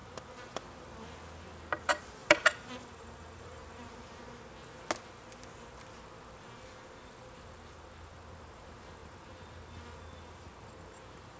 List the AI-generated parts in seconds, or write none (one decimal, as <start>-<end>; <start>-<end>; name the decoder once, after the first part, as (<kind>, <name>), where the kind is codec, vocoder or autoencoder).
2.2-3.9 (vocoder, BigVGAN v2)